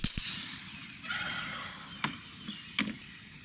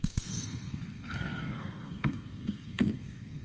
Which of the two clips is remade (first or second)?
second